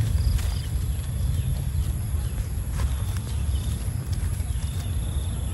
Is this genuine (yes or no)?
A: yes